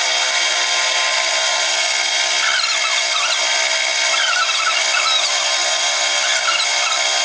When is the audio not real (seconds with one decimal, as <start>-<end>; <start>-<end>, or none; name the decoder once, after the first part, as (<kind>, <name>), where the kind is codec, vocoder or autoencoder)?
none

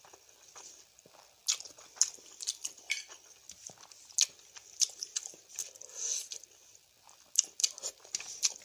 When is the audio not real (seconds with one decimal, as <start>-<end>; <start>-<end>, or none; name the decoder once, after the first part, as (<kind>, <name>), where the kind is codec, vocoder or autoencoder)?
none

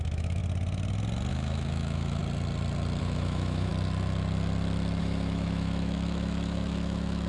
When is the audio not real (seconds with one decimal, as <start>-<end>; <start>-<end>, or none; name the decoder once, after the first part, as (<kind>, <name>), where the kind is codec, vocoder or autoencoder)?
0.0-0.4 (autoencoder, DAC-VAE); 1.3-2.2; 3.0-3.7; 5.0-7.3

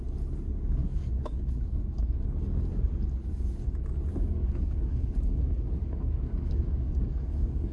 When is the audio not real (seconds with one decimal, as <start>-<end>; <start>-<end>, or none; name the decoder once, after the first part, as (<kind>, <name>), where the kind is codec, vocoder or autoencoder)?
0.8-1.8 (codec, DAC); 4.1-7.7

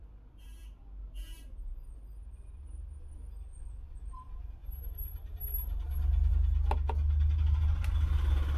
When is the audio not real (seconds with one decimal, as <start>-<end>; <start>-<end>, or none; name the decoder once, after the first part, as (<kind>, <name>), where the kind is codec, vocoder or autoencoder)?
none

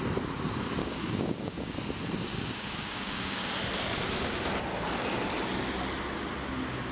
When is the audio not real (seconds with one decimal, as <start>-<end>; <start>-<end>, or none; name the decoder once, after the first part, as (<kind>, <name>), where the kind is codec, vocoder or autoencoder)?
0.8-1.8 (codec, DAC); 2.3-3.6

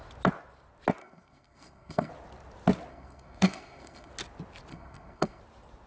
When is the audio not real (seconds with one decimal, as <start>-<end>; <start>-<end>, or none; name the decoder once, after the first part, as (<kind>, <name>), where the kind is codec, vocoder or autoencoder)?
1.0-2.1 (codec, SNAC); 2.9-4.1; 4.7-5.4